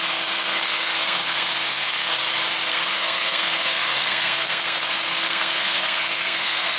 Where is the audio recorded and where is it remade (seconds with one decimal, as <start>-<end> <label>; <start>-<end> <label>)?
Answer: 0.0-2.1 remade; 2.1-2.7 recorded; 2.7-6.8 remade

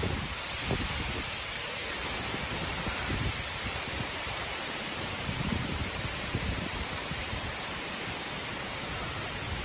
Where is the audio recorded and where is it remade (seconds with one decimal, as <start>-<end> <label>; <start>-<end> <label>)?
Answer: 0.0-2.0 remade; 2.0-3.0 recorded; 3.0-9.6 remade